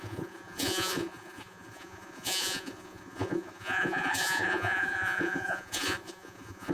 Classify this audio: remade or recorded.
remade